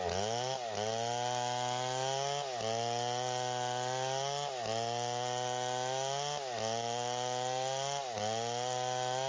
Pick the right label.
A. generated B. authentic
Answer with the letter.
B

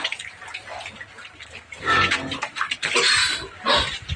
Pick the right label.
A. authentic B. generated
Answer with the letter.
A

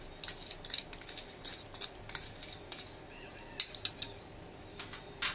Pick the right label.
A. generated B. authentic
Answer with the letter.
B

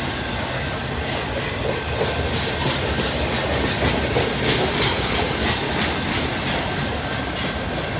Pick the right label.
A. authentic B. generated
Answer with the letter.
A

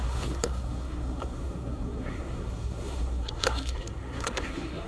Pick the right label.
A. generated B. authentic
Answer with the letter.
A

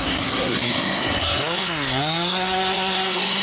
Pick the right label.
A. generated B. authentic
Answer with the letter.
A